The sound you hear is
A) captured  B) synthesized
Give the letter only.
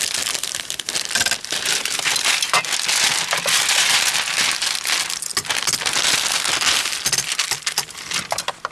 A